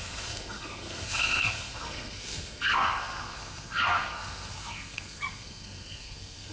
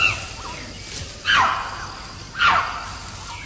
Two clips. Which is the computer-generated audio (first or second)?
first